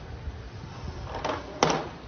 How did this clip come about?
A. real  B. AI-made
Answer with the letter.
A